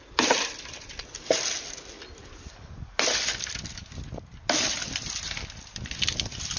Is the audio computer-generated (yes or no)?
no